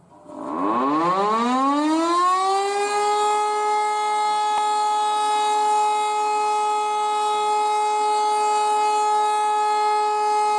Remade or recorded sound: recorded